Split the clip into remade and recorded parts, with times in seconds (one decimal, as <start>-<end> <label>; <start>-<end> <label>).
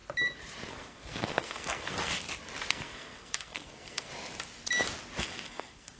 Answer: 0.0-0.7 recorded; 0.7-2.1 remade; 2.1-2.7 recorded; 2.7-4.1 remade; 4.1-5.2 recorded; 5.2-6.0 remade